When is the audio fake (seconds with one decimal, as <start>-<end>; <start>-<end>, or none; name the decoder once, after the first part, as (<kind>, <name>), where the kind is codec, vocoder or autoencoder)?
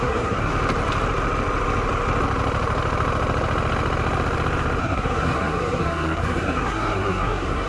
0.0-0.5 (codec, SNAC); 4.8-7.7